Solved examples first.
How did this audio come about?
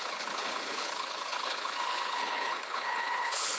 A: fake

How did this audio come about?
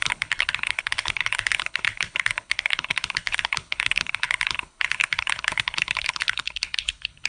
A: fake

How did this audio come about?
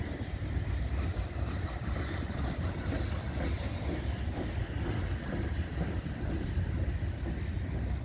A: real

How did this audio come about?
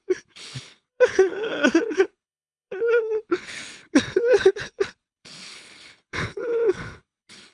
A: fake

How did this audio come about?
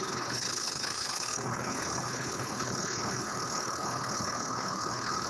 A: fake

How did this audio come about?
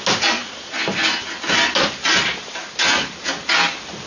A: real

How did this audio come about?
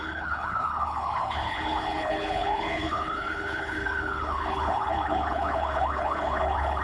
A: fake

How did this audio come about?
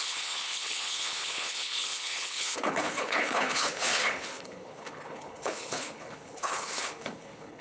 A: fake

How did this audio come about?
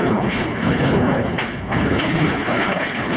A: fake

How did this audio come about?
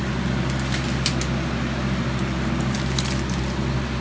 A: real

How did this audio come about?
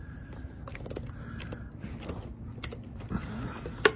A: real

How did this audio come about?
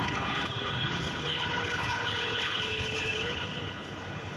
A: fake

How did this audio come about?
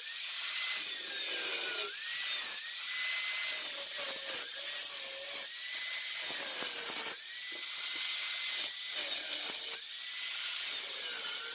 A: real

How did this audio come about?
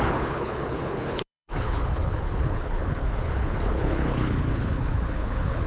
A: fake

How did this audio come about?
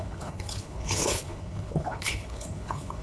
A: fake